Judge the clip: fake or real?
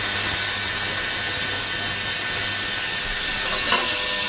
real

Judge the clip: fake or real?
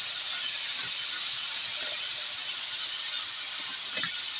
real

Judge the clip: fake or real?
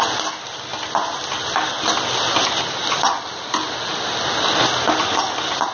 real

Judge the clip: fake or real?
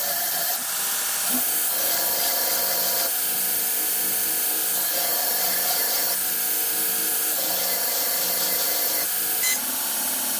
real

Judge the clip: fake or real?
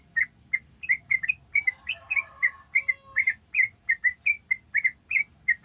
real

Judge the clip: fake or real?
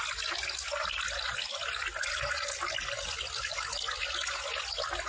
real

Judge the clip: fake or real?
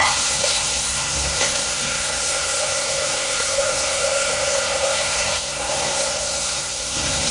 fake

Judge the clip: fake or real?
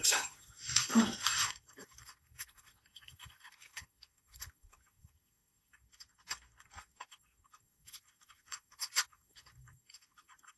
fake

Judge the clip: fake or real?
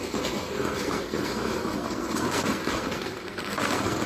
fake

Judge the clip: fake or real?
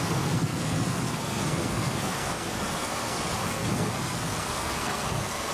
fake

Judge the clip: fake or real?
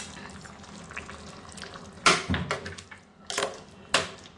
real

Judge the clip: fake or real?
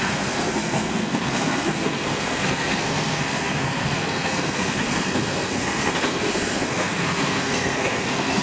fake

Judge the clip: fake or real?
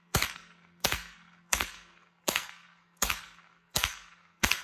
fake